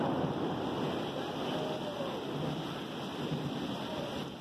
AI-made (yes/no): no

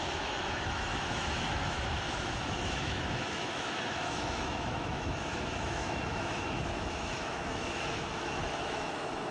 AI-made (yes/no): yes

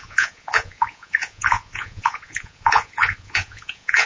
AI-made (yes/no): yes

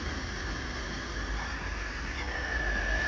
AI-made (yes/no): no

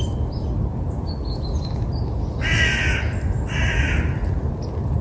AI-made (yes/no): no